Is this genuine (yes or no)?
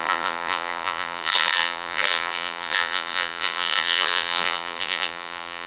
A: no